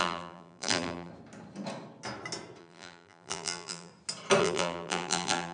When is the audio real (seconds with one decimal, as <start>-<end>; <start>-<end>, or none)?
1.1-2.6; 3.9-4.4